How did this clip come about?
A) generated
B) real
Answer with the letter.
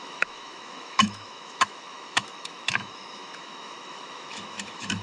A